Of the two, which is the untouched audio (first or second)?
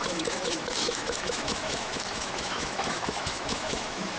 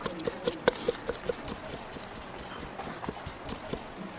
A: second